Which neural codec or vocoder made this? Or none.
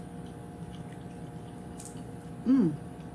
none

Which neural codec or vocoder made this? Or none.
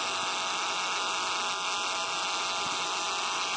none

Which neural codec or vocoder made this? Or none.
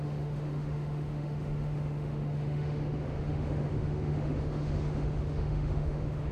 autoencoder, DAC-VAE